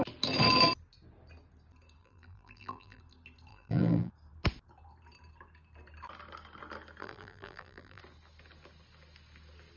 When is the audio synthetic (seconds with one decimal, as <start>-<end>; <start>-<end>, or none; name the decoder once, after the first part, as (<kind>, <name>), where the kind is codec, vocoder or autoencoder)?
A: 2.0-3.0 (vocoder, BigVGAN v2); 3.5-4.1; 7.0-8.0